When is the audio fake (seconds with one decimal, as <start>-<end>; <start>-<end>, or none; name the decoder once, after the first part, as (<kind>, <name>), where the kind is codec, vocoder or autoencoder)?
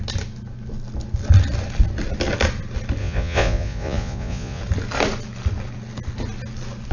3.0-4.6 (vocoder, Vocos)